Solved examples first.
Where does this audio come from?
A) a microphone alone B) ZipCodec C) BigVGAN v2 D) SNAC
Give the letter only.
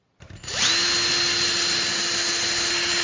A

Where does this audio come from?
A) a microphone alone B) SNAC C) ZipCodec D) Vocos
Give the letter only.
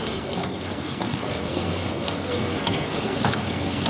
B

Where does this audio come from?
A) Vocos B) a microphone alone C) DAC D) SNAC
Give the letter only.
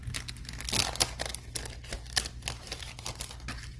B